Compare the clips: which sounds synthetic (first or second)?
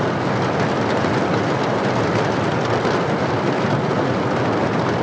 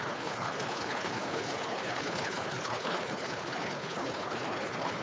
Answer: second